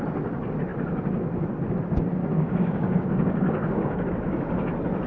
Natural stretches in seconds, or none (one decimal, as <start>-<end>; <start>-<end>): 0.0-2.2; 4.1-5.1